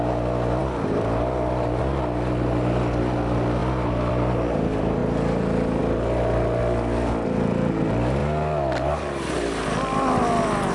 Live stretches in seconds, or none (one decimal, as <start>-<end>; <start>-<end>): 0.0-0.6; 1.8-10.7